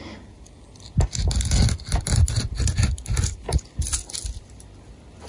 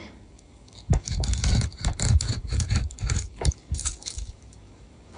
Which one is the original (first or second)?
first